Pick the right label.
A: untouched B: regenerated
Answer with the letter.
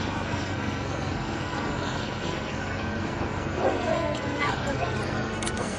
B